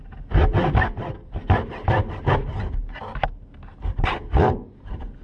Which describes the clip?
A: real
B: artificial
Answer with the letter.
A